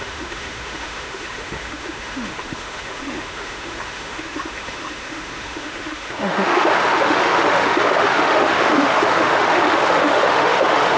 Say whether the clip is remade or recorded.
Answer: remade